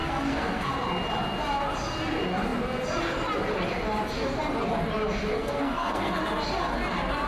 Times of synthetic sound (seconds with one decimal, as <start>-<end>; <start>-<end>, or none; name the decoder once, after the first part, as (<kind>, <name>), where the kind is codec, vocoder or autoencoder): 0.0-0.7 (codec, SNAC); 5.3-6.2